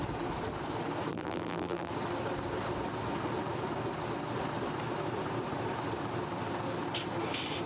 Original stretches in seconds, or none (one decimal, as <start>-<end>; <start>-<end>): 0.0-1.1; 1.9-7.7